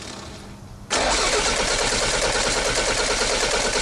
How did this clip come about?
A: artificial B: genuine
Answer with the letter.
B